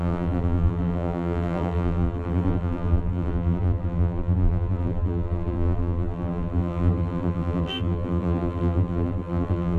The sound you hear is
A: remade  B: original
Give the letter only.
A